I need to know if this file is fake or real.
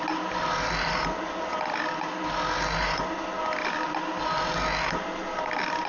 real